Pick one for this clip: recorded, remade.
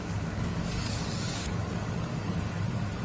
remade